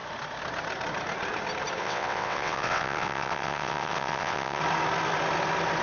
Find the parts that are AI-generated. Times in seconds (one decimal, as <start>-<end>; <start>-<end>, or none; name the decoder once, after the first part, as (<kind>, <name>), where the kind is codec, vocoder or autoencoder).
1.8-4.6 (vocoder, WaveNeXt)